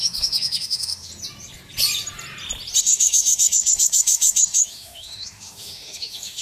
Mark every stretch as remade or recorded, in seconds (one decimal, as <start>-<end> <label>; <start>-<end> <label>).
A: 0.0-1.1 remade; 1.1-2.8 recorded; 2.8-6.4 remade